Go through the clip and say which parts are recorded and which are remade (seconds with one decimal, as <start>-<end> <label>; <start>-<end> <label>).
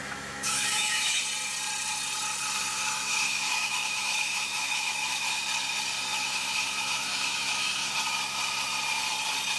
0.0-1.2 remade; 1.2-2.7 recorded; 2.7-5.4 remade; 5.4-6.1 recorded; 6.1-7.9 remade; 7.9-9.6 recorded